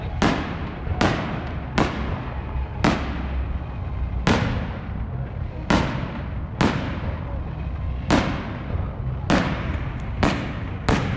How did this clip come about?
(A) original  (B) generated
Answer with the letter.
A